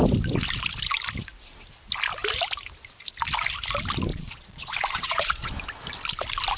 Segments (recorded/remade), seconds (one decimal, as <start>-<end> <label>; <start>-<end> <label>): 0.0-4.1 recorded; 4.1-5.5 remade; 5.5-6.6 recorded